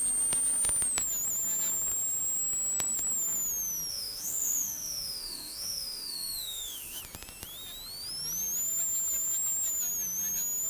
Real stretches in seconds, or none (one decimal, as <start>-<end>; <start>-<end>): 0.0-3.9; 7.0-10.7